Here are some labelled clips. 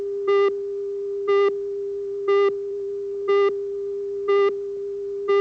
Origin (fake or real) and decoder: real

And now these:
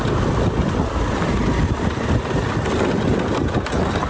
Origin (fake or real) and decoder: real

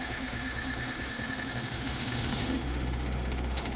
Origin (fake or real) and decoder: fake, autoencoder, DAC-VAE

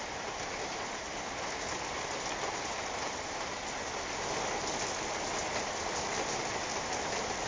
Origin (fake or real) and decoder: real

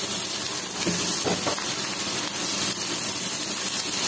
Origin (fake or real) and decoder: real